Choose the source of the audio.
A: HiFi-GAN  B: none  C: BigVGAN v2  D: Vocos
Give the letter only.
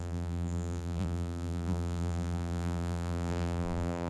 C